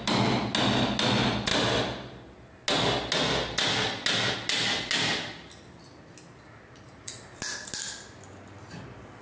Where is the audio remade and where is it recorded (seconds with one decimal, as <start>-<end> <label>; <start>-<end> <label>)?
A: 0.0-9.2 recorded